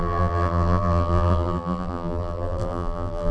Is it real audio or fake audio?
fake